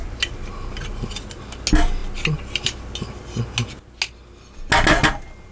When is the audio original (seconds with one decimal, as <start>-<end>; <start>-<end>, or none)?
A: 0.0-5.5